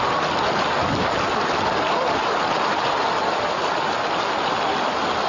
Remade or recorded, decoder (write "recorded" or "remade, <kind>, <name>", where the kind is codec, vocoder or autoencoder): recorded